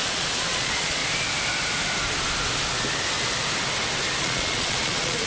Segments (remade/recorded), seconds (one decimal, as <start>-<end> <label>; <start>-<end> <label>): 0.0-1.0 remade; 1.0-4.2 recorded; 4.2-5.3 remade